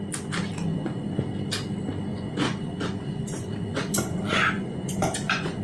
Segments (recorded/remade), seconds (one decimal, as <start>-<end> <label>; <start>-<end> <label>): 0.0-0.7 recorded; 0.7-1.2 remade; 1.2-2.1 recorded; 2.1-5.6 remade